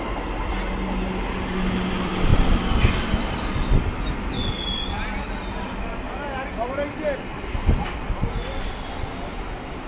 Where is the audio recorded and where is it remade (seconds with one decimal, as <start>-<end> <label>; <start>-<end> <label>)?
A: 0.0-9.9 recorded